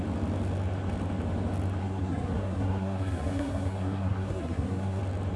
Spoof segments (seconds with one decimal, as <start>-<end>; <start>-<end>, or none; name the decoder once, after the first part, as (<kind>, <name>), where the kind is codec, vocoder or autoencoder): 1.8-5.0 (codec, SNAC)